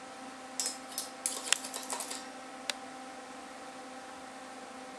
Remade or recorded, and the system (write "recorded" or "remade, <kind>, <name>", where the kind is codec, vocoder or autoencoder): recorded